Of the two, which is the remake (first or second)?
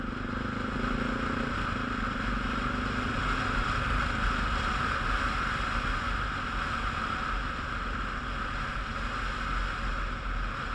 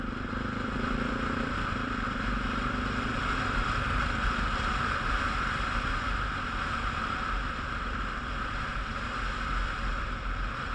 second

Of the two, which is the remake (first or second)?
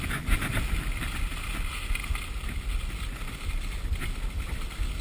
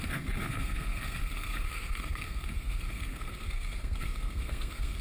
second